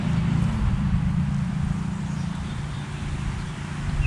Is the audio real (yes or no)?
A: no